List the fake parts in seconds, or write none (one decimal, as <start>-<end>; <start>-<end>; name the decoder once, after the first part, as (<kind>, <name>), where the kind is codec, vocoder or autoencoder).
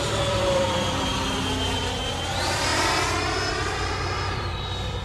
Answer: 0.0-1.1 (vocoder, BigVGAN v2); 2.0-2.7; 3.5-5.0